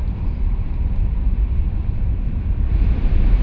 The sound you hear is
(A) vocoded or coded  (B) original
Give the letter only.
A